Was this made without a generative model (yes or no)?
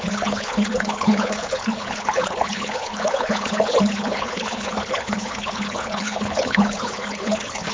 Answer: no